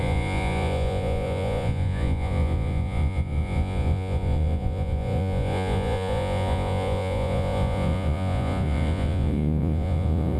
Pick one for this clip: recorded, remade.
remade